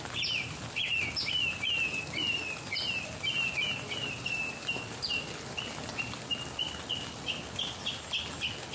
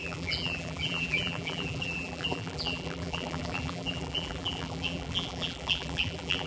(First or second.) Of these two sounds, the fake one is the second